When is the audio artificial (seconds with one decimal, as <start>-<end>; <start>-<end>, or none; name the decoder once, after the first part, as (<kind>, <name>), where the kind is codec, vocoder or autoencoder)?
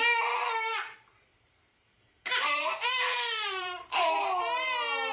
0.8-3.9 (vocoder, BigVGAN v2)